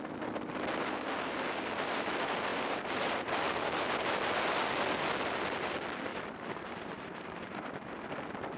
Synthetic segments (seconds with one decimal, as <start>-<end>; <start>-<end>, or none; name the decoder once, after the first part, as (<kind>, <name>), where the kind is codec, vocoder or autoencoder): 2.5-3.4 (vocoder, BigVGAN v2); 6.1-8.0